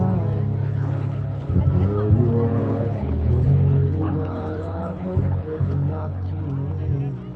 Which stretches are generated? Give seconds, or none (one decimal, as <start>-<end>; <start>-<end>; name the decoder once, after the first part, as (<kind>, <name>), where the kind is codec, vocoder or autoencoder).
0.6-1.6 (codec, HILCodec); 2.5-6.4